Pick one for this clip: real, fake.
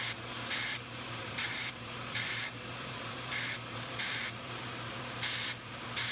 fake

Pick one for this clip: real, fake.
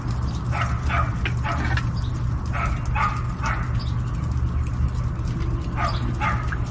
real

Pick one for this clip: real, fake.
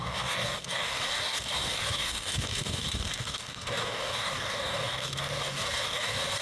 fake